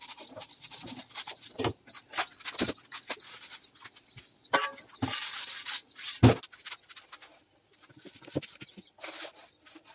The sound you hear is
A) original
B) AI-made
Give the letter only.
A